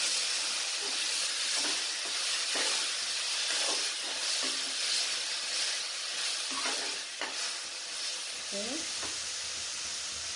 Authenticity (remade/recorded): recorded